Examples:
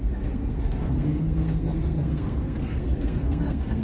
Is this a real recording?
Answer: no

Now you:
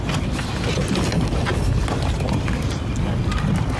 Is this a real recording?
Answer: yes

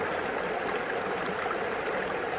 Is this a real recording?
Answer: yes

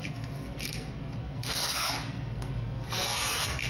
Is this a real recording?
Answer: no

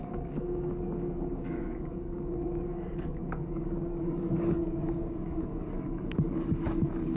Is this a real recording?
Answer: no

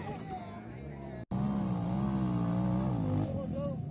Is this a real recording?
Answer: yes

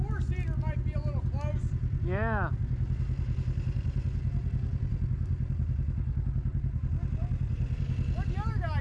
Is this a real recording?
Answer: yes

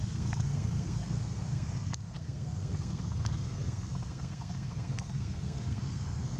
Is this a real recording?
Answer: no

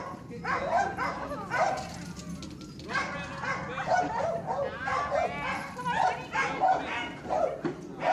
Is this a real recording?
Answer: yes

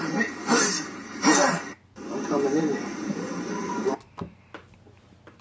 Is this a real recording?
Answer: yes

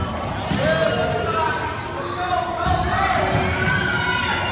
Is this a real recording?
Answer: yes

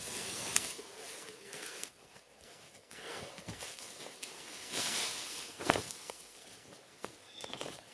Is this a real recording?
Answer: no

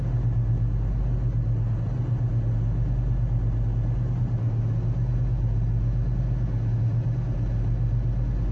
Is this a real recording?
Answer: yes